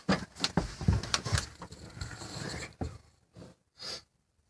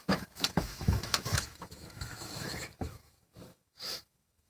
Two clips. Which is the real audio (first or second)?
first